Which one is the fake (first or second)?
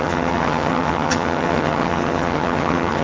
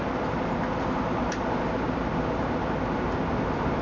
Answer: first